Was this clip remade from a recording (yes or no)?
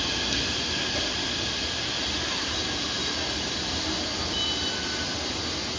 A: no